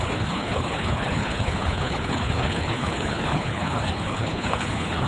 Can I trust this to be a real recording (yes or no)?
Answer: no